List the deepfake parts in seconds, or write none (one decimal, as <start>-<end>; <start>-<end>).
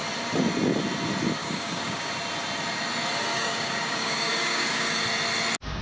1.4-2.1; 3.3-5.0